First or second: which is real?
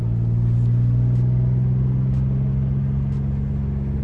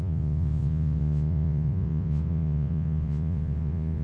first